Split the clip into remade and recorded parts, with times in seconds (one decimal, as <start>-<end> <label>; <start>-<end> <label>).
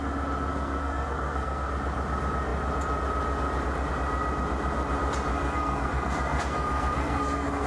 0.0-0.5 recorded; 0.5-1.7 remade; 1.7-5.3 recorded; 5.3-7.7 remade